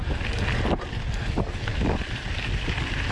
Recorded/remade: recorded